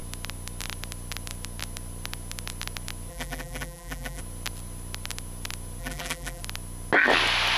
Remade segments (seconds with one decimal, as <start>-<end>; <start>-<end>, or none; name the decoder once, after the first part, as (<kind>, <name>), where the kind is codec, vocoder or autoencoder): 3.1-4.2 (vocoder, BigVGAN v2); 5.8-6.4